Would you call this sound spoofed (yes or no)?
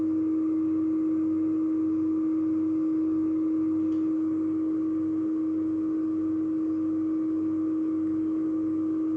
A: no